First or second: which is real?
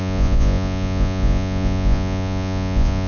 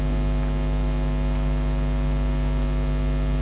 second